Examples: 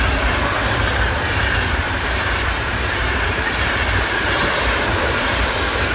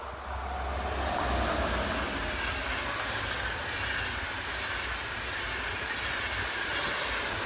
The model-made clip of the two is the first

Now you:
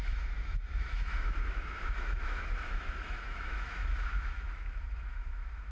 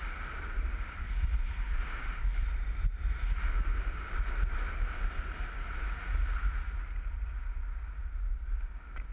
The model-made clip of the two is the first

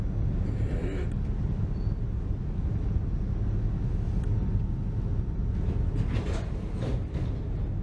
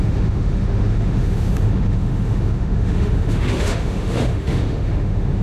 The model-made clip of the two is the second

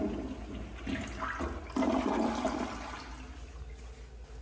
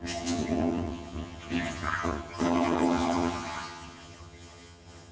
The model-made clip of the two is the second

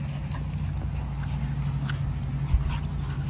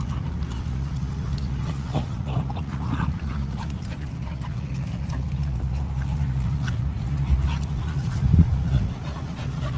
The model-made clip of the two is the second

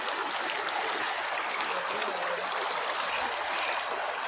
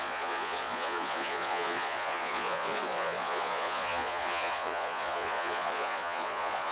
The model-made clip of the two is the second